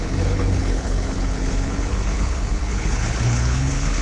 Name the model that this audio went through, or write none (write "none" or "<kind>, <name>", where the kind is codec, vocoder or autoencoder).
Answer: codec, HILCodec